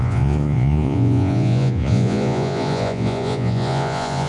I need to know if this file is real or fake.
fake